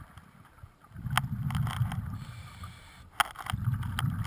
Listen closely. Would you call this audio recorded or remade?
recorded